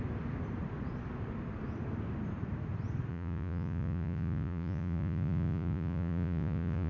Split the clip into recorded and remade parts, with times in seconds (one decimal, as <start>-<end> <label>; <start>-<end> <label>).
0.0-3.1 recorded; 3.1-6.9 remade